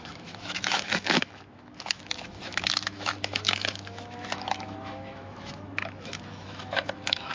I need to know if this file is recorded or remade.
remade